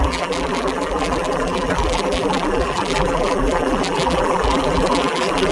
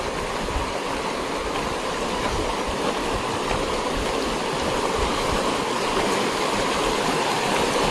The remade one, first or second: first